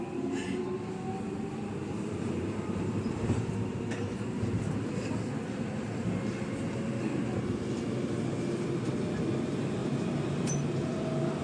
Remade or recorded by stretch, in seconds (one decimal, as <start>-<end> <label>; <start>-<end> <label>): 0.0-1.8 recorded; 1.8-5.0 remade; 5.0-9.8 recorded; 9.8-10.8 remade; 10.8-11.4 recorded